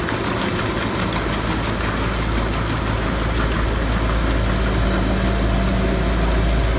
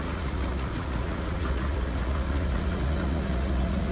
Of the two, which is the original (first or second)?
first